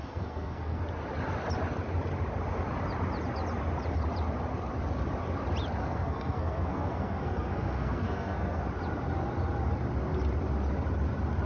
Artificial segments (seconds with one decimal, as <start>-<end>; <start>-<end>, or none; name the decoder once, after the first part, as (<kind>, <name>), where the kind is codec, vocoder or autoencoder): 0.0-0.8 (codec, SNAC); 5.8-8.6